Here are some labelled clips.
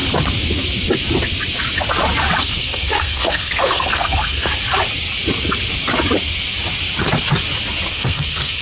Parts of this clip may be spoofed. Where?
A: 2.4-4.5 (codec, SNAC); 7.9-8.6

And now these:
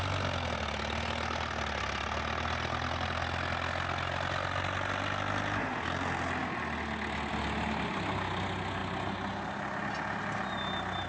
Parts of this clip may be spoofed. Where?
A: none